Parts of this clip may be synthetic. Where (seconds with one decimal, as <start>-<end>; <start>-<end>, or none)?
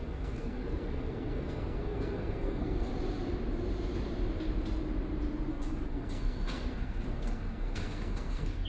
0.0-2.9; 5.5-8.7